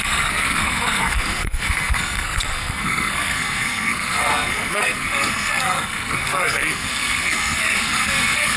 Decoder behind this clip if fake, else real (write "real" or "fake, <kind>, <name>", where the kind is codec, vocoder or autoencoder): fake, codec, SNAC